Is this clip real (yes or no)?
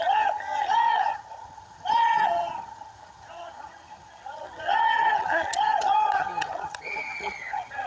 no